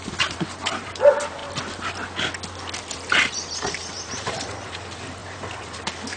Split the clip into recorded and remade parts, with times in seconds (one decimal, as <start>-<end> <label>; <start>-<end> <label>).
0.0-1.4 remade; 1.4-3.1 recorded; 3.1-6.2 remade